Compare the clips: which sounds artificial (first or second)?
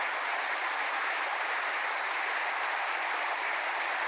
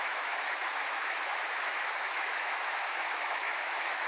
second